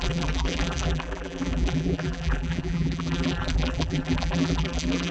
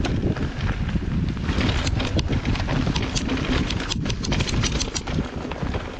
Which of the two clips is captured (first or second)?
second